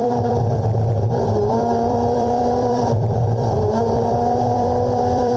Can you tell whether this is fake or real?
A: fake